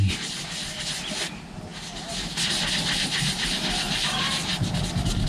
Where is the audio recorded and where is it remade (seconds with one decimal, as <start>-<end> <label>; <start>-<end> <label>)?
0.0-5.3 recorded

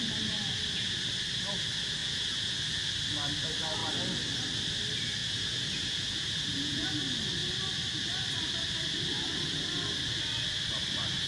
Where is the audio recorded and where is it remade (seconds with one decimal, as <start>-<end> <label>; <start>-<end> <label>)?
0.0-2.0 recorded; 2.0-2.6 remade; 2.6-5.2 recorded; 5.2-6.9 remade; 6.9-11.3 recorded

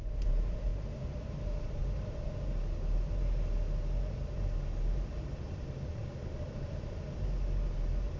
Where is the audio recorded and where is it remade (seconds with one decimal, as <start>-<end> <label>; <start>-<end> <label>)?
0.0-0.7 remade; 0.7-1.3 recorded; 1.3-1.8 remade; 1.8-5.5 recorded; 5.5-6.0 remade; 6.0-8.2 recorded